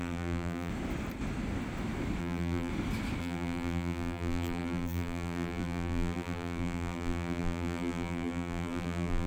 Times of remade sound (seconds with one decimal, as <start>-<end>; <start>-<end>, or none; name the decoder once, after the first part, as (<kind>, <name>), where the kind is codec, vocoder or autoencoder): 0.0-0.7 (vocoder, BigVGAN v2); 2.2-2.7; 3.2-9.3